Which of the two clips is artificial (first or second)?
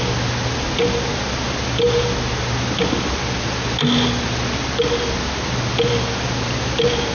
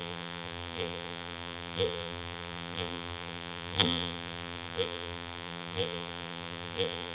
second